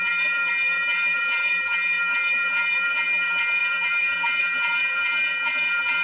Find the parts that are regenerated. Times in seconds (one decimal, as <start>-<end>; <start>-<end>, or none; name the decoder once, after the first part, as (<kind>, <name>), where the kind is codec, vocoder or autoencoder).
0.0-6.0 (vocoder, BigVGAN v2)